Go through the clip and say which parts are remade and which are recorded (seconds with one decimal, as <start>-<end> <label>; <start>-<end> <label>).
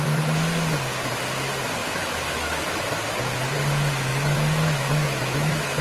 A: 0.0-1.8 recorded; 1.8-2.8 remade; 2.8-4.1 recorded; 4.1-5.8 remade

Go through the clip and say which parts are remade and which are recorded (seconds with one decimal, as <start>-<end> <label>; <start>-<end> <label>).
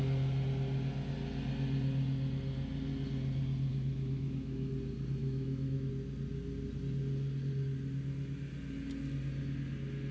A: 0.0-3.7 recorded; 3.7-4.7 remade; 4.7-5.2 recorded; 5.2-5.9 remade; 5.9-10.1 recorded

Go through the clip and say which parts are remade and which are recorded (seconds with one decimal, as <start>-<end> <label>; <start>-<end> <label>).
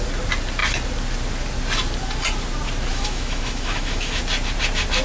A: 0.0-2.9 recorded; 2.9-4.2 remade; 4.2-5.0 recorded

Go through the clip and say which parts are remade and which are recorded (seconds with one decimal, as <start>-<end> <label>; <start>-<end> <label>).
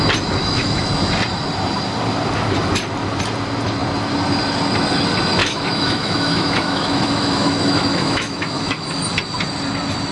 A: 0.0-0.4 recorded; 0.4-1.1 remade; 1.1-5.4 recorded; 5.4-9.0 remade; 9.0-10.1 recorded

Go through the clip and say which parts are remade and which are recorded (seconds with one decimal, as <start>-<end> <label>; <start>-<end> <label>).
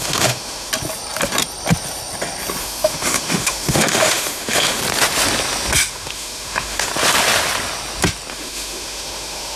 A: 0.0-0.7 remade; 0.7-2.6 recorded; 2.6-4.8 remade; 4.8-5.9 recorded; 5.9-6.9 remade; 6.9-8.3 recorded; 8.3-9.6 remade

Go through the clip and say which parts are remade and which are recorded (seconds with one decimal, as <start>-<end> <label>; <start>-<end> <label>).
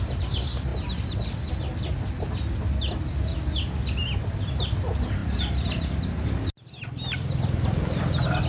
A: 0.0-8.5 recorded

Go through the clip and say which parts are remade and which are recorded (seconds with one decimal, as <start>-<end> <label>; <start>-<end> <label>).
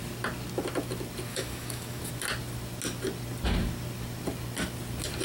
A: 0.0-1.3 recorded; 1.3-2.0 remade; 2.0-5.2 recorded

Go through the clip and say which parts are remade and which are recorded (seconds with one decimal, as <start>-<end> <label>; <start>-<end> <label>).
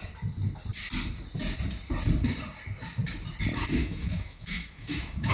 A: 0.0-3.8 recorded; 3.8-5.3 remade